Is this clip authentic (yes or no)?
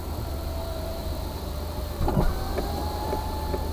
no